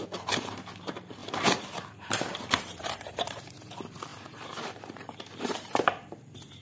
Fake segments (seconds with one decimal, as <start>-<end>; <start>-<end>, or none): 0.0-6.6